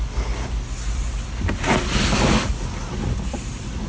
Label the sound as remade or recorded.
recorded